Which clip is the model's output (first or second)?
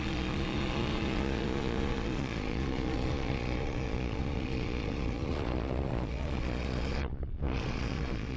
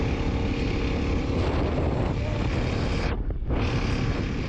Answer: first